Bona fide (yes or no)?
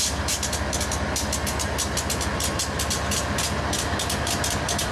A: yes